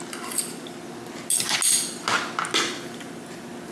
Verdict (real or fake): real